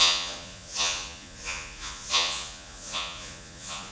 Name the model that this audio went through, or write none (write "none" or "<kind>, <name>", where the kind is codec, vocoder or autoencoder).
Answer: vocoder, Vocos